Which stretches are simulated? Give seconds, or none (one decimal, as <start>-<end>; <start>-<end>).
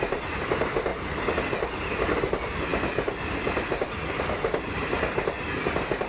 none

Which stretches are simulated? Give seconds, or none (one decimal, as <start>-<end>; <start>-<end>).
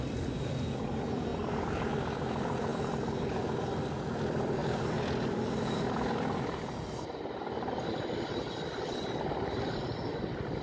none